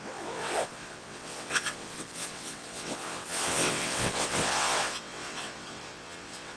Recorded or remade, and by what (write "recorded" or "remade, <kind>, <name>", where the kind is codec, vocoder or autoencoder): remade, vocoder, WaveNeXt